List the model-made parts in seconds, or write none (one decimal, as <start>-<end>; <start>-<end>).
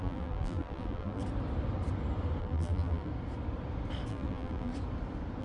0.0-1.2; 2.4-3.1; 4.1-4.7